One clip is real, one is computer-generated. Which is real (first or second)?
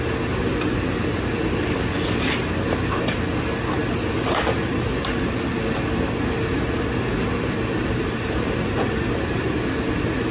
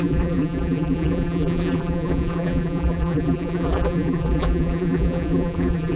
first